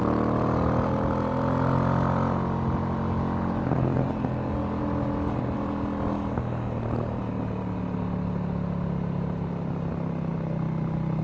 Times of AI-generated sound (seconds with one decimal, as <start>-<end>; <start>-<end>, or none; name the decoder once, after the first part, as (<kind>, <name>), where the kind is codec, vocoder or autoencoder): none